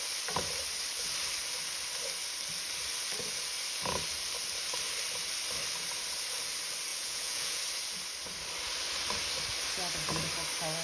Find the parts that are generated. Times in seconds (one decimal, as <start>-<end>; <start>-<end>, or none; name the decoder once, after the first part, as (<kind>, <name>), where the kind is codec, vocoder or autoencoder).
6.9-7.6 (vocoder, Vocos)